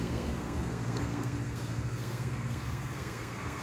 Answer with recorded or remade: remade